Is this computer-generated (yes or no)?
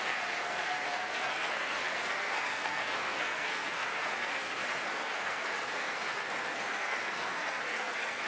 yes